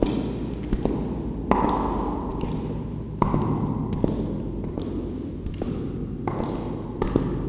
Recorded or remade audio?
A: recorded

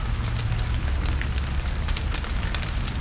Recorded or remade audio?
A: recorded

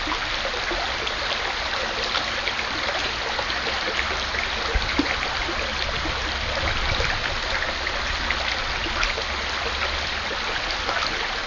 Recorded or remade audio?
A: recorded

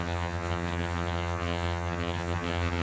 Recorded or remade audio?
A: remade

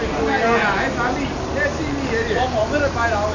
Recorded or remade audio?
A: recorded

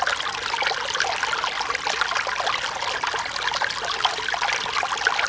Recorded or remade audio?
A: recorded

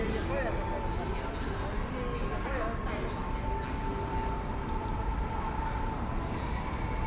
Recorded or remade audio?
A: recorded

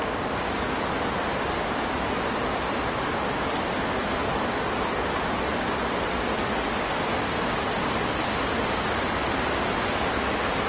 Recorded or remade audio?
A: recorded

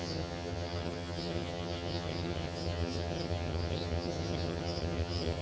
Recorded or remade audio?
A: remade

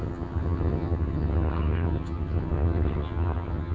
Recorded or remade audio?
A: remade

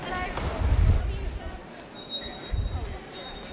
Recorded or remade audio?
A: recorded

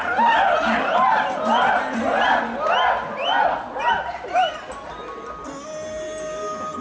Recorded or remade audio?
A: recorded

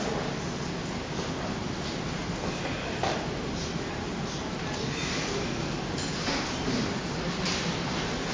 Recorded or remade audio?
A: recorded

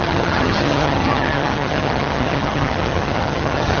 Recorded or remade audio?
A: remade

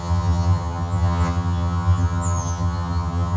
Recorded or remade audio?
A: remade